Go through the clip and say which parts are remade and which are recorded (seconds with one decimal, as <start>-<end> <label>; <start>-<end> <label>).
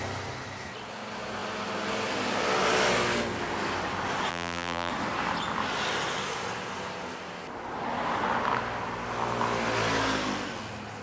0.0-4.3 recorded; 4.3-4.9 remade; 4.9-11.0 recorded